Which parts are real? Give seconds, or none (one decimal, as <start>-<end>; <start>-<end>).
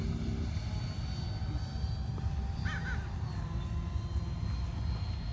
0.0-5.3